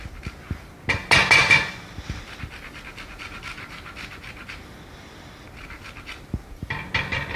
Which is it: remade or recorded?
recorded